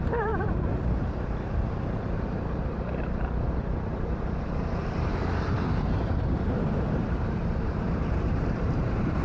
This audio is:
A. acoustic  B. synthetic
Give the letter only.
B